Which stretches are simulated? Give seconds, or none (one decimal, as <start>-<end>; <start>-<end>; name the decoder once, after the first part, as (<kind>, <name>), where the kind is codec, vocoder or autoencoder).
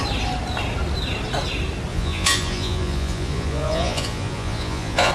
1.9-5.1 (vocoder, Vocos)